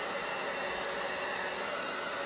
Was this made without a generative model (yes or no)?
yes